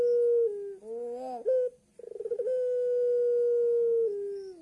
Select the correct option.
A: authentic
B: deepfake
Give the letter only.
A